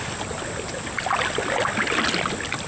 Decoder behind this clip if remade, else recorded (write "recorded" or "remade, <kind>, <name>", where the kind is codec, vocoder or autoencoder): recorded